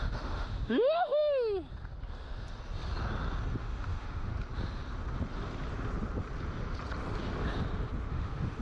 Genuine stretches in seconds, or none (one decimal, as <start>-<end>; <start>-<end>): 1.2-3.6; 4.3-8.1